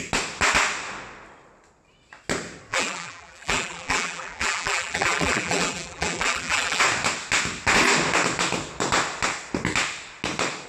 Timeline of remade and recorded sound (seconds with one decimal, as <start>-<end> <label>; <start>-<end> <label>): 0.0-2.7 recorded; 2.7-6.8 remade; 6.8-10.7 recorded